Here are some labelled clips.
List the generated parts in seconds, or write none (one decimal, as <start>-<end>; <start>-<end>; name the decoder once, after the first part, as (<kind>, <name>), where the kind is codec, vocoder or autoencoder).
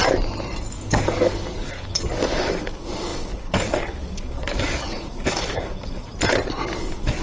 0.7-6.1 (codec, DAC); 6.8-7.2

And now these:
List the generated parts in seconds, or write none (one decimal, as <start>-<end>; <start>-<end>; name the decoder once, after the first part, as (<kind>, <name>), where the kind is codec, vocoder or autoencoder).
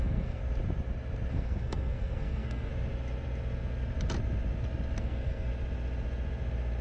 0.0-0.4 (codec, SNAC); 1.3-2.7; 5.0-5.5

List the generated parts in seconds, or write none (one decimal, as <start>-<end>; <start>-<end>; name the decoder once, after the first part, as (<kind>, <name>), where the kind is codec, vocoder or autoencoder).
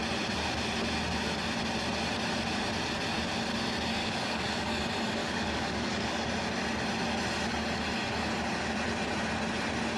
4.0-4.8 (codec, DAC); 5.2-6.3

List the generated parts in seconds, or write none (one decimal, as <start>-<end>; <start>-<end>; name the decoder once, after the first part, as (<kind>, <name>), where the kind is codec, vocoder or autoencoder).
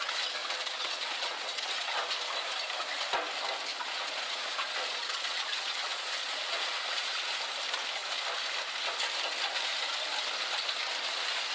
0.4-1.9 (vocoder, Vocos); 3.7-7.4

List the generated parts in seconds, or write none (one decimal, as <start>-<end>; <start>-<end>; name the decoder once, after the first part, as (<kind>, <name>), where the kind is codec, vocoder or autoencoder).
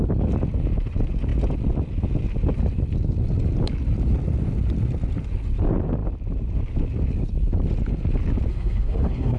8.5-9.4 (codec, SNAC)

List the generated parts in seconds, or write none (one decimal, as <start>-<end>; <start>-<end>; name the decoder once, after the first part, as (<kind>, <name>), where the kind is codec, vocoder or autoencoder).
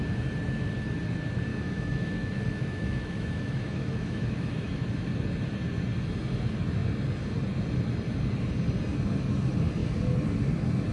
1.5-4.9 (autoencoder, DAC-VAE)